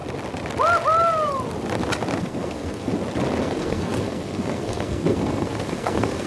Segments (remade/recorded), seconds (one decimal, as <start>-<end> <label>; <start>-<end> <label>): 0.0-2.2 recorded; 2.2-2.9 remade; 2.9-3.4 recorded; 3.4-6.3 remade